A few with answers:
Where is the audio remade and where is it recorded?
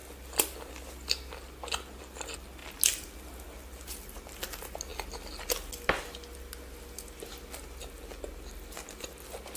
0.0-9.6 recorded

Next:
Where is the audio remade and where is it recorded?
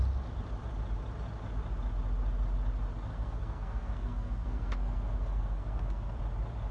0.0-3.1 recorded; 3.1-6.2 remade; 6.2-6.7 recorded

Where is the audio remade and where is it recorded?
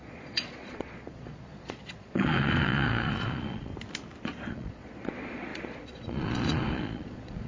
0.0-3.7 remade; 3.7-4.5 recorded; 4.5-7.5 remade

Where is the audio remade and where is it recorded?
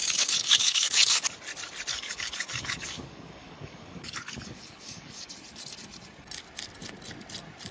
0.0-1.3 remade; 1.3-1.9 recorded; 1.9-5.3 remade; 5.3-7.7 recorded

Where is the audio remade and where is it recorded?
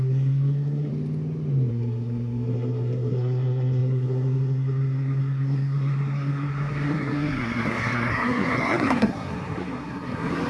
0.0-0.9 remade; 0.9-1.7 recorded; 1.7-10.5 remade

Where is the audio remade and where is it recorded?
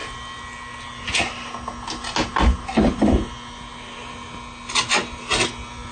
0.0-5.9 recorded